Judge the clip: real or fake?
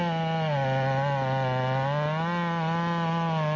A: real